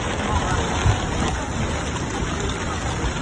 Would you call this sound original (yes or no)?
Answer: yes